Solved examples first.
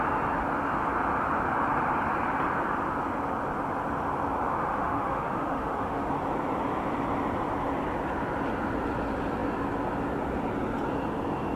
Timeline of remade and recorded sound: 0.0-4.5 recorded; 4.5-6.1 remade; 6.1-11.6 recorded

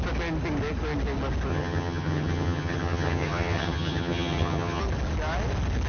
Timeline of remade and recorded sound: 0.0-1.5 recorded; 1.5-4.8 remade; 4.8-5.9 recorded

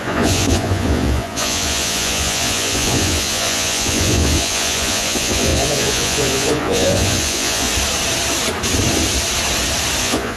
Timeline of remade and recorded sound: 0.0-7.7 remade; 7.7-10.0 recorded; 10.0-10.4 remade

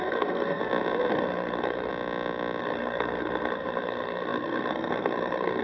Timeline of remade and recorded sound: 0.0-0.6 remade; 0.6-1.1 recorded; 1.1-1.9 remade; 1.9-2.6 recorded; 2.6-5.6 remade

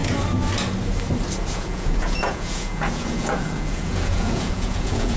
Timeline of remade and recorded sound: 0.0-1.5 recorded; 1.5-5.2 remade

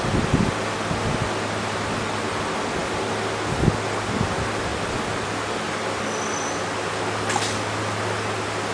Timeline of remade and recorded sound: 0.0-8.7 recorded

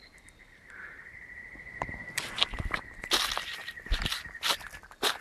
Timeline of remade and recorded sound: 0.0-2.3 remade; 2.3-5.2 recorded

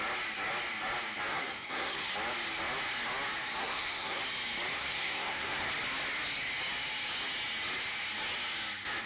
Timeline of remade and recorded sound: 0.0-1.3 recorded; 1.3-2.1 remade; 2.1-3.6 recorded; 3.6-4.2 remade; 4.2-4.8 recorded; 4.8-5.7 remade; 5.7-9.1 recorded